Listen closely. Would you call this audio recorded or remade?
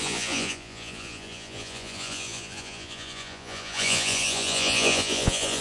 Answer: remade